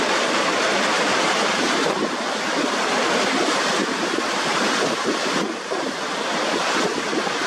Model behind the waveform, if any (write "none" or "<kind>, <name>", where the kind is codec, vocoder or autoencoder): none